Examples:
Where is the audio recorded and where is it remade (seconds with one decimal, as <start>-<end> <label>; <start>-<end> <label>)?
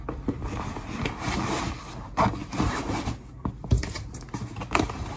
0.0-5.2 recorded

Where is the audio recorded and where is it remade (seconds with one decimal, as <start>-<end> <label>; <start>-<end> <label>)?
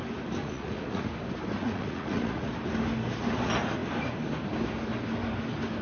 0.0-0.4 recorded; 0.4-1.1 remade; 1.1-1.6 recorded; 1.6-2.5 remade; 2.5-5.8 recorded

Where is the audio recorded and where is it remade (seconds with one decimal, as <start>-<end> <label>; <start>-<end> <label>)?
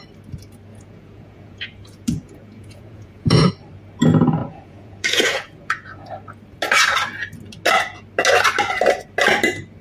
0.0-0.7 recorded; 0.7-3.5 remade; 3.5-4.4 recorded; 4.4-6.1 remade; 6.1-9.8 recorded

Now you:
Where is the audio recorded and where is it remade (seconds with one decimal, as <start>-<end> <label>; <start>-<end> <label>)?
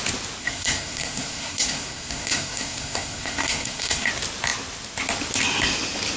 0.0-0.4 recorded; 0.4-4.1 remade; 4.1-6.2 recorded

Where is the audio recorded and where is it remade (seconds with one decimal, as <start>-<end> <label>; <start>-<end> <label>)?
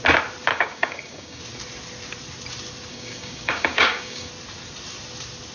0.0-0.5 recorded; 0.5-1.4 remade; 1.4-2.9 recorded; 2.9-4.3 remade; 4.3-5.5 recorded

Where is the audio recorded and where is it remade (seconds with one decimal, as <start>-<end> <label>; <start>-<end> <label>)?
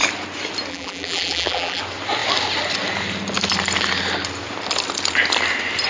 0.0-0.7 recorded; 0.7-1.8 remade; 1.8-5.9 recorded